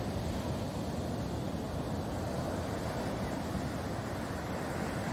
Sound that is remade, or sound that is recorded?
recorded